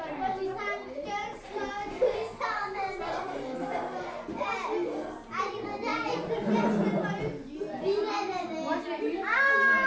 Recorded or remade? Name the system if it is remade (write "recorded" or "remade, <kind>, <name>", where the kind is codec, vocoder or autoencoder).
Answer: recorded